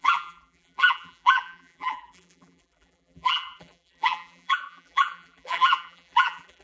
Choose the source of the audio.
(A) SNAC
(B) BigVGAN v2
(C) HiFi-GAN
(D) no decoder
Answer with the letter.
B